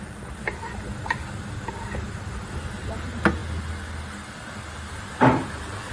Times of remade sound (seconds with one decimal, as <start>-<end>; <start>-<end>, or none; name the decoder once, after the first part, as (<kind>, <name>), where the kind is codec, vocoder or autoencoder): none